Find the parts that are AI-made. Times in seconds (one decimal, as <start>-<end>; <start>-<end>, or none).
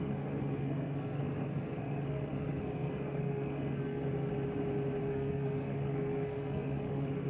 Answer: 0.0-4.3; 5.0-7.3